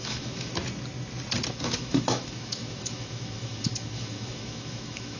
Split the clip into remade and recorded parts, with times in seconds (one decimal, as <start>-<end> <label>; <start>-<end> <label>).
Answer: 0.0-0.5 remade; 0.5-1.5 recorded; 1.5-5.2 remade